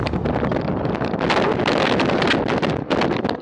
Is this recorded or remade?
recorded